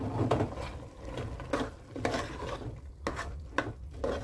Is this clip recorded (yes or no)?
yes